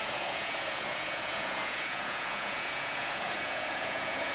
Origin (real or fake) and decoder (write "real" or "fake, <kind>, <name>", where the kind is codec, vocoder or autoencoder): fake, vocoder, Vocos